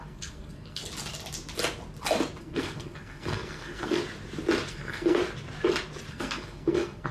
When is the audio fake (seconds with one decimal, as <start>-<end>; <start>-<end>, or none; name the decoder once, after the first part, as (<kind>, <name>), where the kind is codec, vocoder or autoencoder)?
0.0-0.8 (codec, SNAC); 2.4-4.0; 4.7-5.2; 6.1-7.1